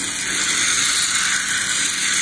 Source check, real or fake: real